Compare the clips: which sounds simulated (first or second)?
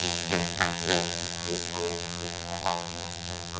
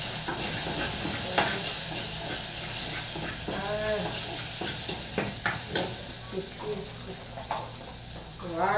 first